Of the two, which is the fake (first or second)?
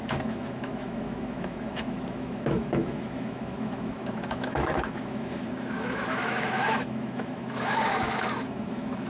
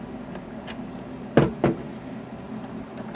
first